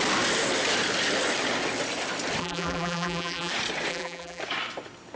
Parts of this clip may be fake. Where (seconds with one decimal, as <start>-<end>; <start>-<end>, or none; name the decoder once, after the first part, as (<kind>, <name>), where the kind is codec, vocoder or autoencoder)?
2.4-3.5 (vocoder, BigVGAN v2); 3.9-4.4